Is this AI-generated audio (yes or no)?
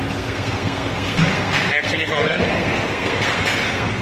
yes